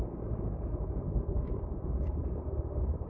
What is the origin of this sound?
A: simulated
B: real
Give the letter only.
A